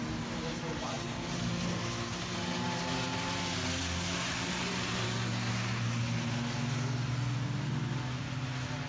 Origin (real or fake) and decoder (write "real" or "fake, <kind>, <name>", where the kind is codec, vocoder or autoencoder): real